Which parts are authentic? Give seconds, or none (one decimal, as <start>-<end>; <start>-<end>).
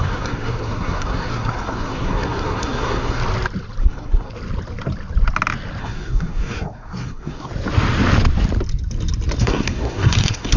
3.2-3.8; 4.3-5.8; 7.5-9.4